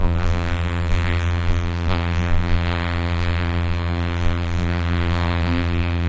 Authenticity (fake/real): fake